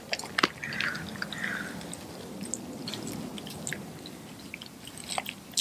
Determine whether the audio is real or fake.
real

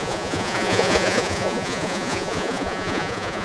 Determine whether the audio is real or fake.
fake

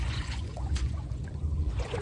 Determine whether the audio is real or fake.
fake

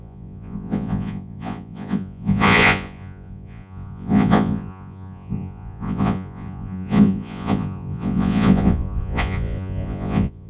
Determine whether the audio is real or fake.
fake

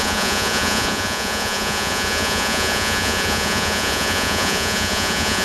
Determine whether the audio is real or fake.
fake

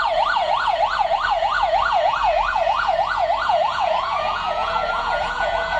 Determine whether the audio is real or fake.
fake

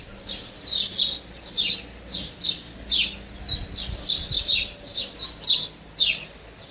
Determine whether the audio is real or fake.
real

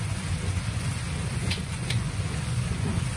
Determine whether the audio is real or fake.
fake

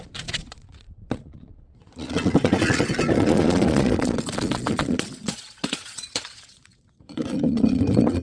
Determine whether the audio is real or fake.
fake